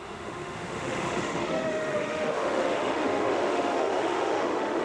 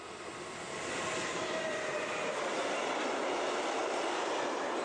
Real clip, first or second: second